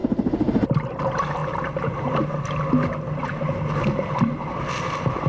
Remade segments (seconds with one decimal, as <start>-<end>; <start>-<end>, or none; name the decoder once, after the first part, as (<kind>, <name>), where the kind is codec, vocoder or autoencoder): none